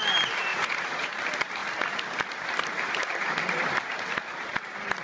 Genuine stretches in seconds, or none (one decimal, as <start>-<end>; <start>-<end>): 0.0-0.5; 1.1-5.0